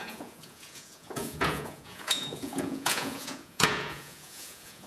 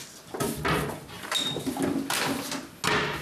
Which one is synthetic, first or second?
first